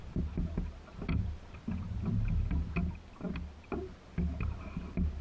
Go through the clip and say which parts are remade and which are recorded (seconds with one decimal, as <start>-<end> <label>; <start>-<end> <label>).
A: 0.0-5.2 recorded